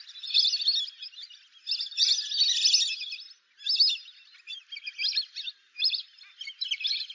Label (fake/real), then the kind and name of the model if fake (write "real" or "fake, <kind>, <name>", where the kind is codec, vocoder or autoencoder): real